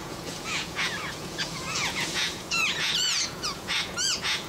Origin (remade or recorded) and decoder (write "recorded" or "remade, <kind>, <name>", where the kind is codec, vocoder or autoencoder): remade, vocoder, Vocos